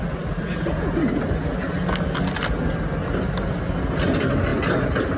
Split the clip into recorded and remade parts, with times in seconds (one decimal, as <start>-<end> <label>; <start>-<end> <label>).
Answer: 0.0-5.2 recorded